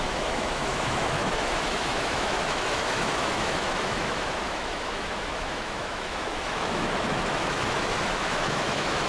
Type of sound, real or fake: fake